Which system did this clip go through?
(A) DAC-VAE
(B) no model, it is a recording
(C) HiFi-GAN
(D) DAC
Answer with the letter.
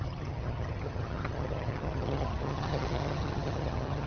C